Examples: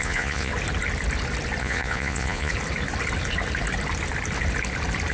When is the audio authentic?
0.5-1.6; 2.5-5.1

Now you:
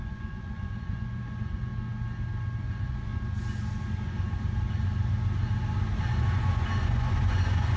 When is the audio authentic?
1.7-2.6; 3.1-6.0

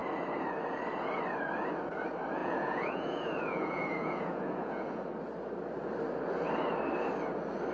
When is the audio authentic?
0.0-2.4; 5.0-7.7

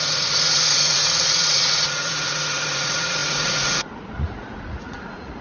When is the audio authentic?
none